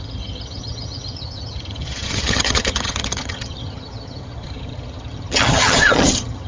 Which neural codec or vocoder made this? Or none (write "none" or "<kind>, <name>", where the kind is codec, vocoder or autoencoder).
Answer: vocoder, HiFi-GAN